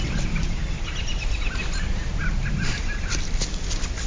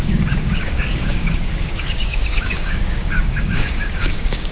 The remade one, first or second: second